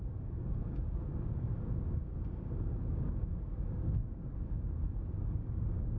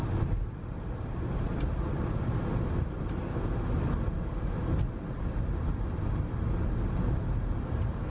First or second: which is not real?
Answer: first